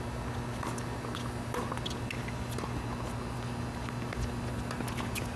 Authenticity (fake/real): real